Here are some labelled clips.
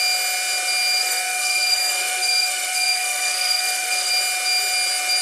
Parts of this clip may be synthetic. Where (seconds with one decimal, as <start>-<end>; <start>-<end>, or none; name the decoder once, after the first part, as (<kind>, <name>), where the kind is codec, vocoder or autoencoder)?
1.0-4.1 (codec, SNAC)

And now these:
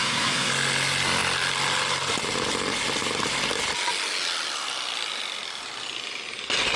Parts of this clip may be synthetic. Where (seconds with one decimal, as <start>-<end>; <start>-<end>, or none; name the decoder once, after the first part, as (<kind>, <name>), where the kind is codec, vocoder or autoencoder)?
0.0-0.5 (codec, SNAC)

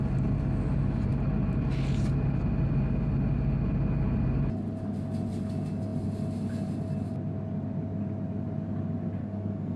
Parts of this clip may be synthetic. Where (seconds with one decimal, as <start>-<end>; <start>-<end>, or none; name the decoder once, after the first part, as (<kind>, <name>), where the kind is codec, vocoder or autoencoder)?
9.2-9.8 (codec, SNAC)